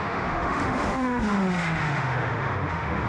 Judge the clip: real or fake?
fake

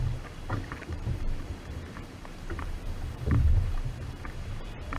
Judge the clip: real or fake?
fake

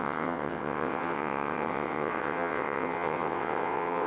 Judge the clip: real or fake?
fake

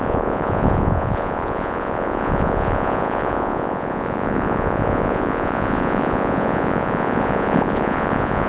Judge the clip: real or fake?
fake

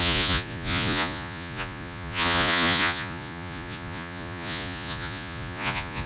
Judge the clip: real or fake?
fake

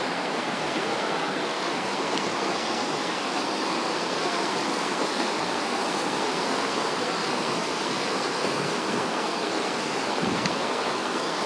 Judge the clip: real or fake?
fake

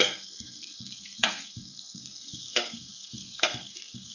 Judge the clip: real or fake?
fake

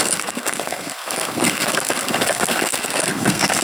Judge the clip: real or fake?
fake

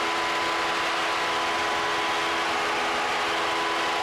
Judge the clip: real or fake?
real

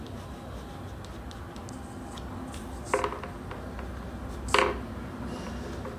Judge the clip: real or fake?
real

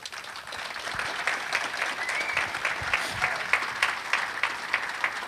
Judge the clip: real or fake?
real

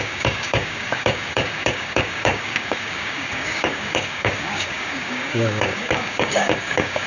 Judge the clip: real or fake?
fake